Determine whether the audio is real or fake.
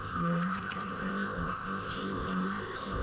fake